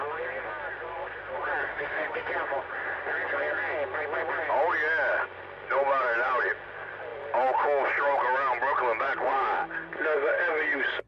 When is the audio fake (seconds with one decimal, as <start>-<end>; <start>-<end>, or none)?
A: 1.7-2.3